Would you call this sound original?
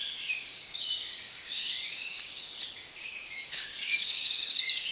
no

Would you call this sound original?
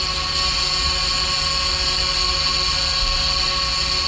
yes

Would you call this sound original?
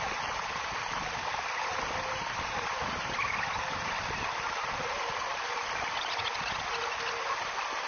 yes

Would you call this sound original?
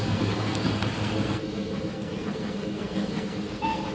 no